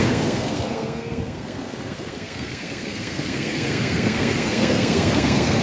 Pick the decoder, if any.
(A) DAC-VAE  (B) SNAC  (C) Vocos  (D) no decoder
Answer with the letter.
B